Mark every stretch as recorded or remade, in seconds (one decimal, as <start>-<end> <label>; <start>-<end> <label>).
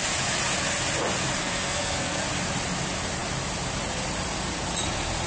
0.0-1.4 recorded; 1.4-2.2 remade; 2.2-5.3 recorded